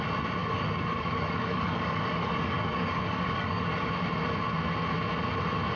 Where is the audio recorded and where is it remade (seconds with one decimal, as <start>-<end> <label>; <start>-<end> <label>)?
0.0-0.4 recorded; 0.4-3.9 remade; 3.9-5.8 recorded